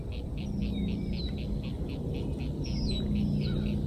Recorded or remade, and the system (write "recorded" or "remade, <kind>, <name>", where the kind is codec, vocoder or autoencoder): recorded